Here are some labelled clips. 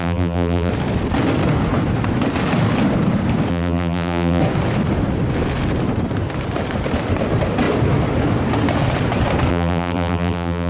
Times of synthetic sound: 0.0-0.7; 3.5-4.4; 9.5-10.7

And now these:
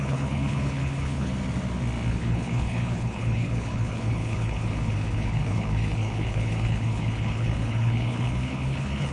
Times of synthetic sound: 0.0-1.3; 2.1-9.1